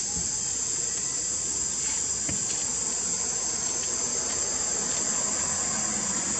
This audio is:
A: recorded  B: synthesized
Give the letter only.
A